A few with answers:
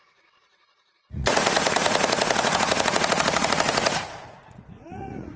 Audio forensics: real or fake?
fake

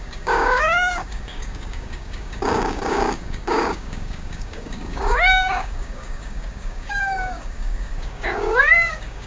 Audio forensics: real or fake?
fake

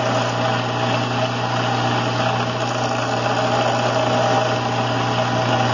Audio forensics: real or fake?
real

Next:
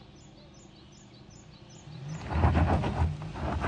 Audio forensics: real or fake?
real